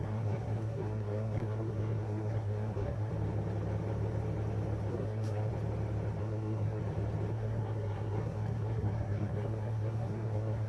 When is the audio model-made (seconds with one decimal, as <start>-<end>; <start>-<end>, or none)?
0.0-3.1; 4.9-5.5; 6.2-6.8; 7.3-10.7

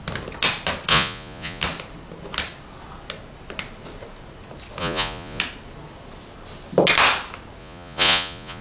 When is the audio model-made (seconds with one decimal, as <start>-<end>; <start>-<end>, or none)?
0.9-1.6; 4.8-5.4; 7.6-8.6

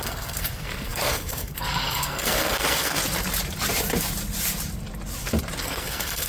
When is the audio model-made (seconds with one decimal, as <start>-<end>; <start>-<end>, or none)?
0.0-3.0; 5.6-6.3

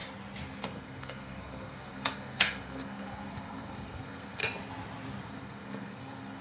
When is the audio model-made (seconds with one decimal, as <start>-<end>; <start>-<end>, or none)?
0.6-4.4; 5.2-6.4